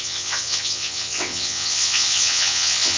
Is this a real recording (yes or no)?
no